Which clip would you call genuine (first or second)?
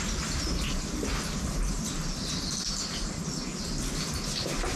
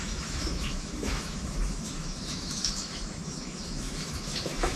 first